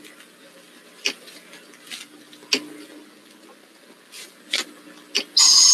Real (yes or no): yes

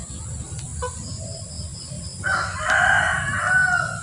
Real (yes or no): yes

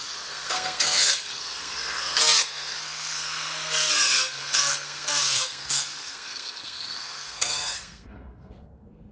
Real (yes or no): no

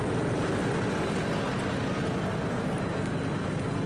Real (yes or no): yes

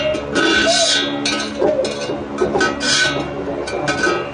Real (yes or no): yes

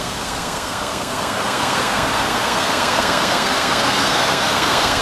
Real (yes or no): no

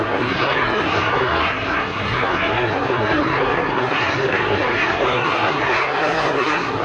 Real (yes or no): no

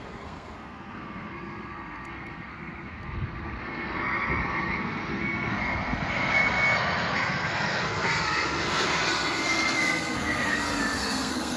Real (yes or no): no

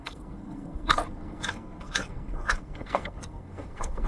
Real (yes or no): no